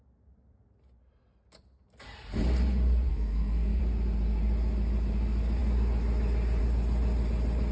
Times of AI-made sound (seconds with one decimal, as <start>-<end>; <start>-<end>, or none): 3.1-3.8